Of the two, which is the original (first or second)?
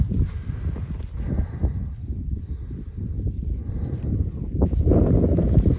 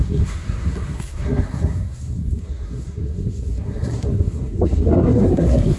first